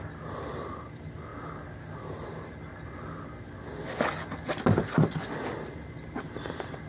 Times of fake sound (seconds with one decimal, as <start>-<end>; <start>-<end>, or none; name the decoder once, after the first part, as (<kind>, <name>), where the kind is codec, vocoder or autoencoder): none